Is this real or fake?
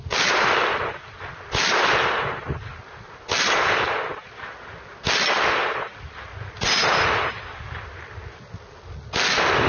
real